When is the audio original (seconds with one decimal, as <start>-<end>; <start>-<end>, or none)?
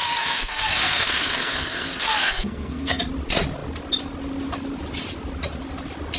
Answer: 3.0-6.2